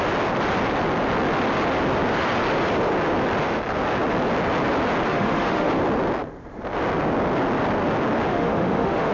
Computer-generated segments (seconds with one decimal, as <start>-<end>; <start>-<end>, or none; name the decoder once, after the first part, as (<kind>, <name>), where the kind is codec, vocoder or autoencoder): 5.1-5.7 (autoencoder, DAC-VAE); 8.3-9.1